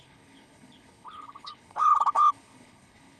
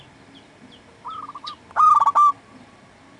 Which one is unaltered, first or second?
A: second